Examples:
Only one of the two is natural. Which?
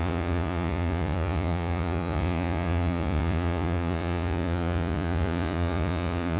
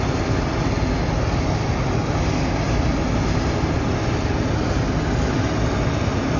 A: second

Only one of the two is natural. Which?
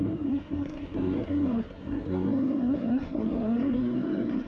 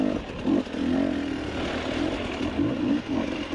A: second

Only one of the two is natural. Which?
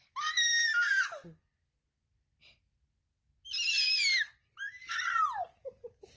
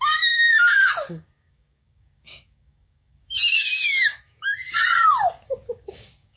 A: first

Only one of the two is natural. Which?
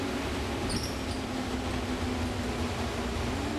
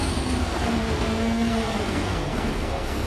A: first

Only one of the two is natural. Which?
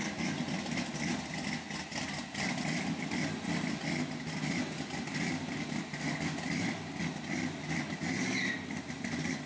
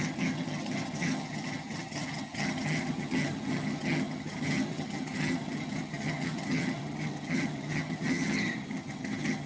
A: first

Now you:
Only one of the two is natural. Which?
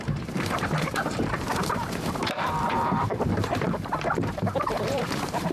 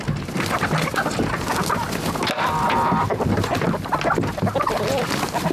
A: second